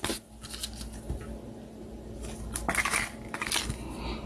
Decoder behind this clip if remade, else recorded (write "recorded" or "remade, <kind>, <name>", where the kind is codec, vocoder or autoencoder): recorded